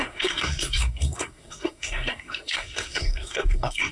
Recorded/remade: remade